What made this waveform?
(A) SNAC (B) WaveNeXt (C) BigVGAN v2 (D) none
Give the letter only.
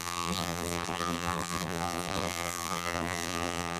C